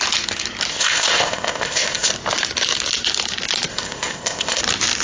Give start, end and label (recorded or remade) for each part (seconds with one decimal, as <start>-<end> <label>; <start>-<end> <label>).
0.0-0.7 recorded; 0.7-2.1 remade; 2.1-3.7 recorded; 3.7-4.6 remade; 4.6-5.0 recorded